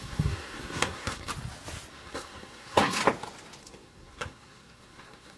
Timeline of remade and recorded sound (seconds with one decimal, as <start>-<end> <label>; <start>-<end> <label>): 0.0-1.3 remade; 1.3-1.9 recorded; 1.9-3.0 remade; 3.0-3.6 recorded; 3.6-5.4 remade